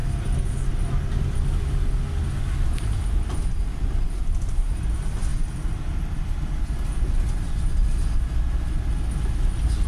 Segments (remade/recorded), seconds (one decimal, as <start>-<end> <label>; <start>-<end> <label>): 0.0-9.9 recorded

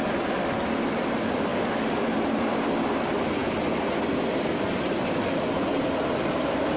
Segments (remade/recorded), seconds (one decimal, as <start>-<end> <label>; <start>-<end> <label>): 0.0-6.8 recorded

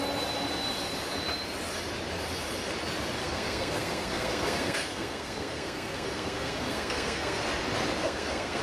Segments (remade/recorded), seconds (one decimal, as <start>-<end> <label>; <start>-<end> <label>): 0.0-3.2 recorded; 3.2-7.4 remade; 7.4-8.0 recorded; 8.0-8.6 remade

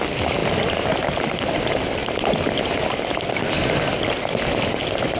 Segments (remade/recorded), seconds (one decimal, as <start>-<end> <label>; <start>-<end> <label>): 0.0-5.2 recorded

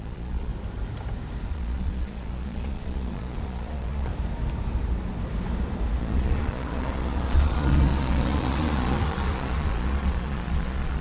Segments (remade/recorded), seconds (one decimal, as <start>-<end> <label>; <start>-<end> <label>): 0.0-0.5 remade; 0.5-1.5 recorded; 1.5-4.1 remade; 4.1-6.0 recorded; 6.0-11.0 remade

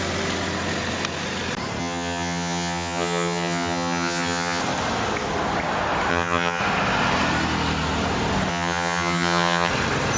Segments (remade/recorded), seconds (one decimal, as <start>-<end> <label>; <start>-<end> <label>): 0.0-1.8 recorded; 1.8-4.6 remade; 4.6-6.1 recorded; 6.1-6.6 remade; 6.6-8.5 recorded; 8.5-9.7 remade; 9.7-10.2 recorded